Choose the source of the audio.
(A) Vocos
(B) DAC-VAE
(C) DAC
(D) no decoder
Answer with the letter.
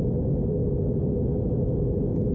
D